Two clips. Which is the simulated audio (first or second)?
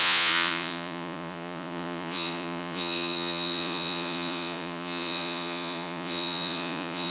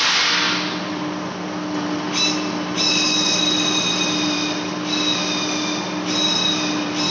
first